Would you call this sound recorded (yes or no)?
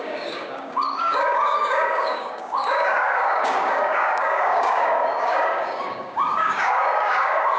no